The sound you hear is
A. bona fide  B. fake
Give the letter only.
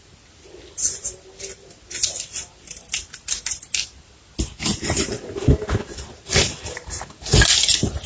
A